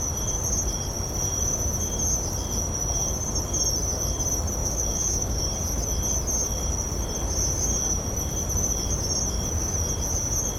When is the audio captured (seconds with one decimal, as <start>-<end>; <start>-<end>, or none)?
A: 0.0-4.6; 5.4-10.6